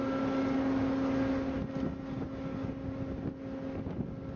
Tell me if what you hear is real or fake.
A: real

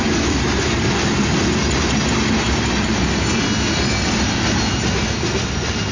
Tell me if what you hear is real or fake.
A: real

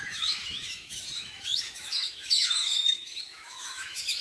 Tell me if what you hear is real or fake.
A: fake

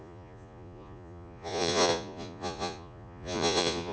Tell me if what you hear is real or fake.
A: fake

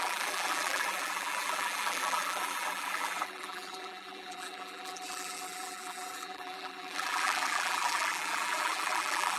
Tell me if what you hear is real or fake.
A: fake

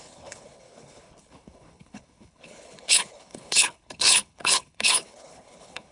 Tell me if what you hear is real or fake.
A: fake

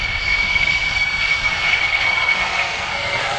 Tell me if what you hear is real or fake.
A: fake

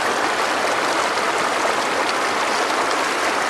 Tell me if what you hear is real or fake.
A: real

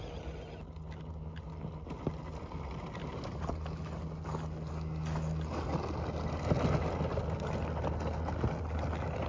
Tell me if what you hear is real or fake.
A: real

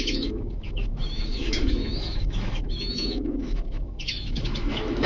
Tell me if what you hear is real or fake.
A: fake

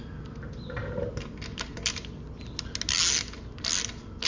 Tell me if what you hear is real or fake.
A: real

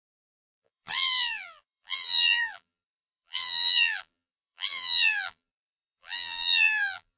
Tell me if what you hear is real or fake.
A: fake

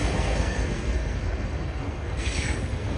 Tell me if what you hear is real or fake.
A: fake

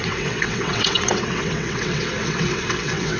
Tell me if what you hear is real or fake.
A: fake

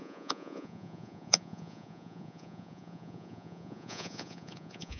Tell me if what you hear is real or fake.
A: fake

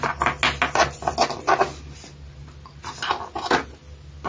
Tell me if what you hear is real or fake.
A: real